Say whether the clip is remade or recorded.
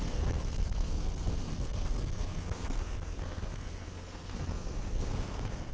remade